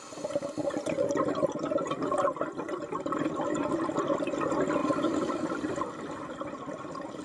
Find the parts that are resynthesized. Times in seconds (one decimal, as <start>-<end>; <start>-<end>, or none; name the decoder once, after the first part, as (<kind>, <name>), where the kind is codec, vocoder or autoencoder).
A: none